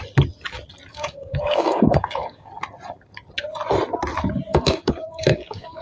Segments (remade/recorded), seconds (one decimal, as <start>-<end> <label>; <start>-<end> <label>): 0.0-0.9 recorded; 0.9-2.5 remade; 2.5-4.5 recorded; 4.5-5.8 remade